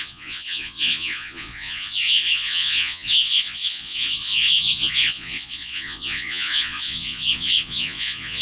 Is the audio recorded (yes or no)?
no